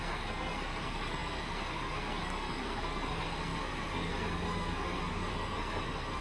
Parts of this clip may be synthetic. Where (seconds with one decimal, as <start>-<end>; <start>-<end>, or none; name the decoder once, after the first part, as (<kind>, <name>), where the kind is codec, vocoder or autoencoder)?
0.0-6.2 (codec, SNAC)